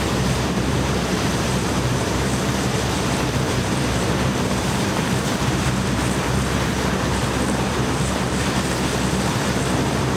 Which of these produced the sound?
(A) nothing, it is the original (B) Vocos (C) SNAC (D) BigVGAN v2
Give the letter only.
D